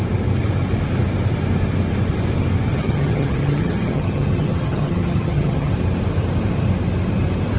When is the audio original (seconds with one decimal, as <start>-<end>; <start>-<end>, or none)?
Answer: 0.0-2.7; 5.7-7.6